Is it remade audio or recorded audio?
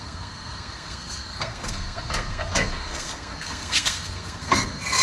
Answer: remade